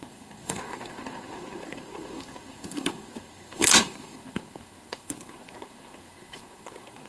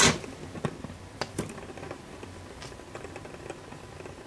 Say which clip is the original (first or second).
second